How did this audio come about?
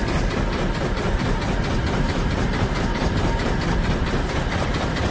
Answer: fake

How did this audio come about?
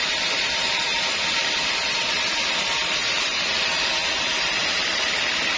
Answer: real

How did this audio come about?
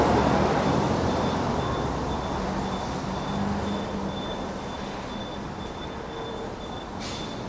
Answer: real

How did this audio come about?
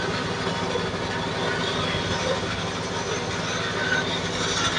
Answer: real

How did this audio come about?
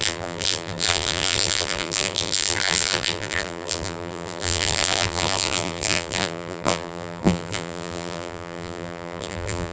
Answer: fake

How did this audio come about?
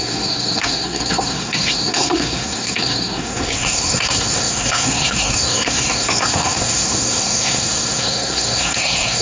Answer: fake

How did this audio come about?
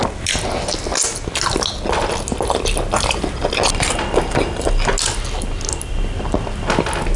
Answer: real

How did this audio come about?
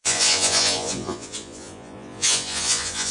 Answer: fake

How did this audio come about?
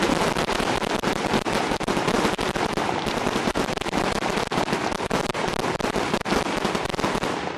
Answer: real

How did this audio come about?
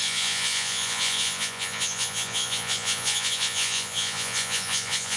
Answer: fake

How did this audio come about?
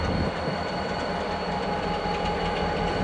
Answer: real